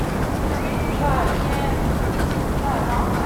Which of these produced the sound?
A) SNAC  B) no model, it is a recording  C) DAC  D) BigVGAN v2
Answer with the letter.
B